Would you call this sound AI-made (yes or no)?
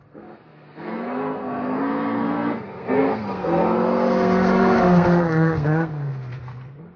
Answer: yes